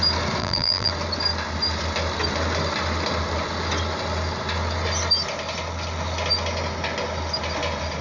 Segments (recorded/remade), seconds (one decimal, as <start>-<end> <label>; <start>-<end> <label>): 0.0-0.4 recorded; 0.4-0.9 remade; 0.9-8.0 recorded